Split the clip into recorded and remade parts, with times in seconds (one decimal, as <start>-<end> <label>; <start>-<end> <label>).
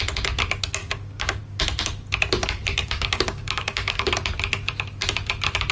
0.0-0.8 recorded; 0.8-1.4 remade; 1.4-2.8 recorded; 2.8-4.1 remade; 4.1-5.7 recorded